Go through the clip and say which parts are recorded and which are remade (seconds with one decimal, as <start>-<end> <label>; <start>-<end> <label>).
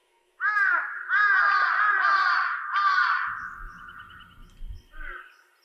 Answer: 0.0-1.0 remade; 1.0-5.6 recorded